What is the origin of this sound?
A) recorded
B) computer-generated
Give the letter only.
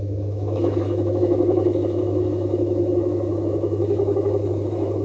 B